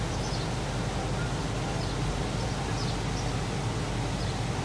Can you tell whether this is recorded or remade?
recorded